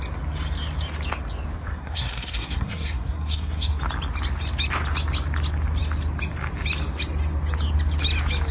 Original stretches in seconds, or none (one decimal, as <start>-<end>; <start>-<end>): 0.0-1.7; 3.8-8.5